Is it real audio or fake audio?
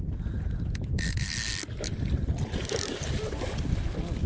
real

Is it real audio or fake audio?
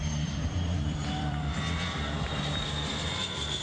fake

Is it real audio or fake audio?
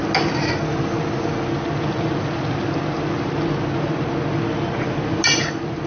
real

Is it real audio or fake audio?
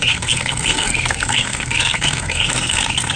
fake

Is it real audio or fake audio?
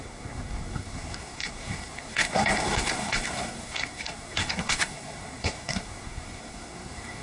fake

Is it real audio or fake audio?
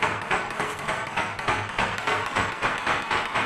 fake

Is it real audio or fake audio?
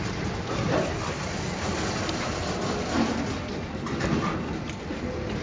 fake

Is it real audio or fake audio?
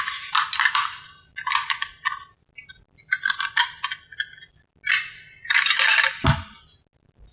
real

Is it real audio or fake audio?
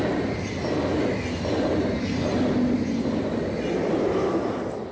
real